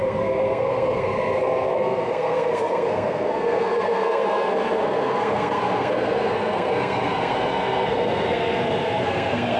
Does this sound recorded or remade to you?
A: remade